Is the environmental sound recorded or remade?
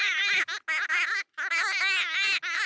recorded